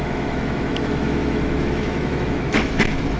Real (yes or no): no